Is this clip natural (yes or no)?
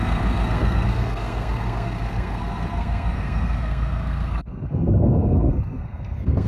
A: no